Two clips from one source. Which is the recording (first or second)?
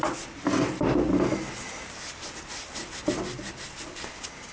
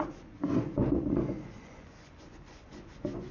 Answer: first